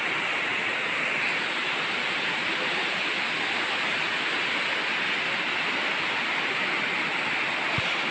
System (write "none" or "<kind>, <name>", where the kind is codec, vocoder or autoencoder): none